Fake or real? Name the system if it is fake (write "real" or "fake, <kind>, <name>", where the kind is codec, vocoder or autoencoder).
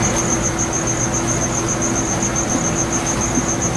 real